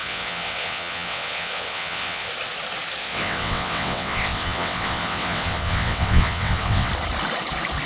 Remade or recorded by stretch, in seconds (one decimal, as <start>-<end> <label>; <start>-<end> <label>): 0.0-2.3 remade; 2.3-3.0 recorded; 3.0-6.9 remade; 6.9-7.9 recorded